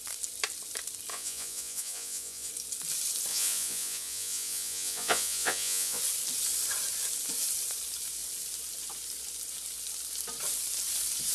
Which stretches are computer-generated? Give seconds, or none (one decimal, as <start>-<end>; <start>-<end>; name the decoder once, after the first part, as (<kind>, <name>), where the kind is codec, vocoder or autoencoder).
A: 1.1-2.5 (vocoder, Vocos); 3.3-6.0